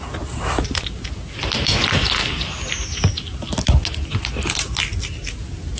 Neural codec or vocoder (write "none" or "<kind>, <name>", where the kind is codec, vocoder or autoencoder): none